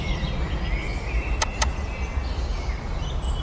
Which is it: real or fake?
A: real